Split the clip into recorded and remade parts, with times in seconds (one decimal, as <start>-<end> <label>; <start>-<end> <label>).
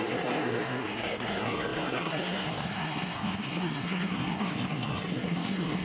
0.0-5.8 remade